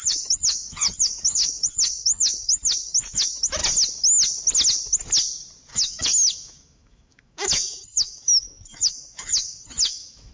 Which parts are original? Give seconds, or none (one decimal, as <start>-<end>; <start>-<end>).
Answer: 3.6-5.7